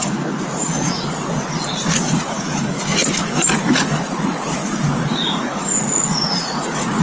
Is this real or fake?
fake